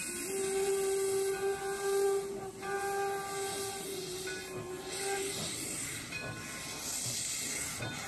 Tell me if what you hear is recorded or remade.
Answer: recorded